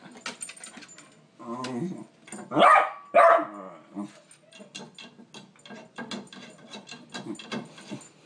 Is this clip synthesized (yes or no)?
no